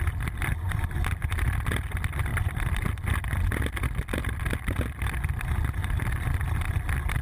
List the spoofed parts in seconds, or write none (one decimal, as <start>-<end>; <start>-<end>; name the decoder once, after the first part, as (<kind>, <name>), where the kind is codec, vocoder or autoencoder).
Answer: none